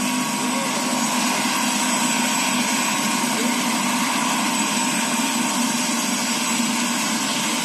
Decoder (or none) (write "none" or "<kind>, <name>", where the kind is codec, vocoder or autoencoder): none